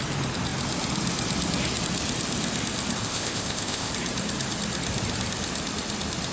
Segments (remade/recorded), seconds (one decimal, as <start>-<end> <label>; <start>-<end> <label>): 0.0-3.0 recorded; 3.0-3.9 remade; 3.9-6.3 recorded